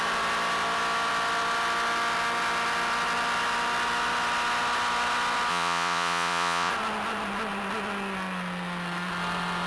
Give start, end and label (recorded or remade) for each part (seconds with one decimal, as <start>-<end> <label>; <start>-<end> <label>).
0.0-5.5 recorded; 5.5-6.7 remade; 6.7-9.7 recorded